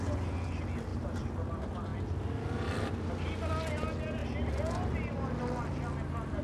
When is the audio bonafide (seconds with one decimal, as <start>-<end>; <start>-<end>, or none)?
0.0-0.9; 1.5-6.4